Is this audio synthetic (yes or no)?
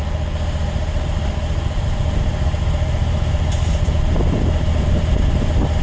no